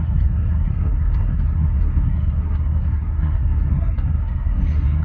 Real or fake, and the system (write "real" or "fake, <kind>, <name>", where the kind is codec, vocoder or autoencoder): fake, codec, SNAC